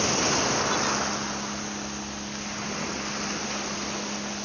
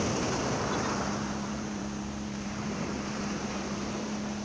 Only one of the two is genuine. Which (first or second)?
first